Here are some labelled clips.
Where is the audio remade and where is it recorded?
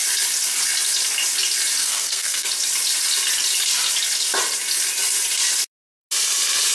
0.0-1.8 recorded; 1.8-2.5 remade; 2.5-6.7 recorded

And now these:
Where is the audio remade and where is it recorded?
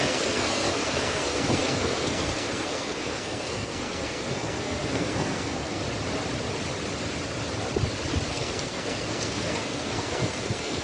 0.0-5.8 remade; 5.8-8.3 recorded; 8.3-10.8 remade